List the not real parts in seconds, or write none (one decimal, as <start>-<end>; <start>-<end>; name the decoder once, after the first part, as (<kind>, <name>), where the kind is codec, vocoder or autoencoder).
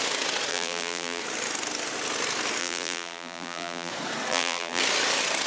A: 0.5-1.2 (vocoder, BigVGAN v2); 2.6-3.9; 4.3-4.8